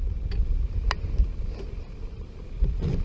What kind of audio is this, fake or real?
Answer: real